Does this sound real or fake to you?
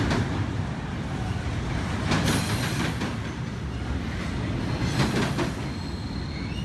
real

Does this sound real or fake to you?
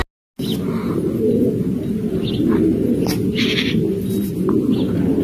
real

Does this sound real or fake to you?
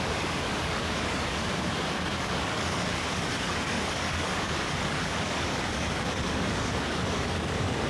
fake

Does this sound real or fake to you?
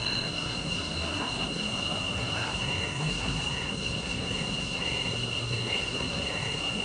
fake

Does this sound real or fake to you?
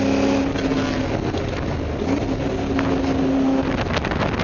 real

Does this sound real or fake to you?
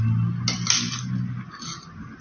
real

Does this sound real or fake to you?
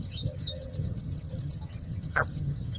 fake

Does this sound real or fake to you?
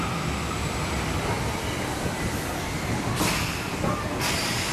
real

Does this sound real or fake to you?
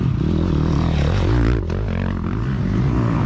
real